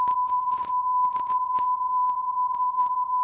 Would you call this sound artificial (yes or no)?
yes